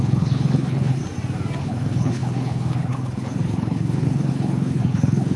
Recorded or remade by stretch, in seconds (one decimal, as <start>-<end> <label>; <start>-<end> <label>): 0.0-1.0 remade; 1.0-1.6 recorded; 1.6-5.4 remade